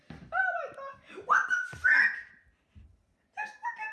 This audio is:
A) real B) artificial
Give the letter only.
A